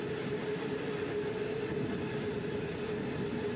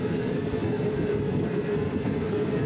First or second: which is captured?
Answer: first